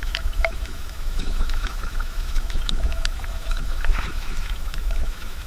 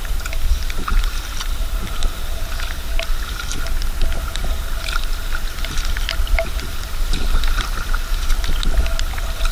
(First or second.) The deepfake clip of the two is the first